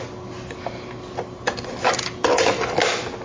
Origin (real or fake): real